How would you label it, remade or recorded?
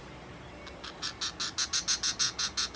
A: recorded